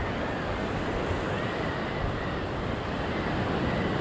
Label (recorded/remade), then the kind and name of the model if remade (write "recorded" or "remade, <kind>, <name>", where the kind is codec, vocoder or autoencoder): recorded